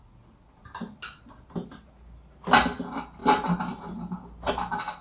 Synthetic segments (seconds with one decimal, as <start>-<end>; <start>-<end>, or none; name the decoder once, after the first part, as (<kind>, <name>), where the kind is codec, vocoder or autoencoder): none